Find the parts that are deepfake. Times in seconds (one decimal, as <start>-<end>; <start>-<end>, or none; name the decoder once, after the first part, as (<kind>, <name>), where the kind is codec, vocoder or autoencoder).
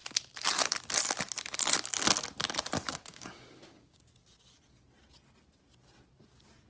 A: 2.9-4.0 (codec, DAC)